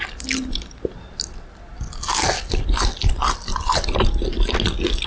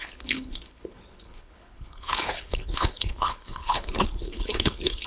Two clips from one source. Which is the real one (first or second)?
first